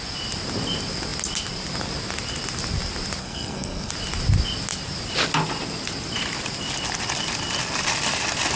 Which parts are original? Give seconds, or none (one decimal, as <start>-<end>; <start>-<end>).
0.0-3.2; 3.9-8.6